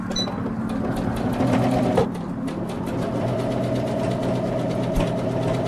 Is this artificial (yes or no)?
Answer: no